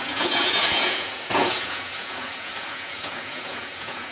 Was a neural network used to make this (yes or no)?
yes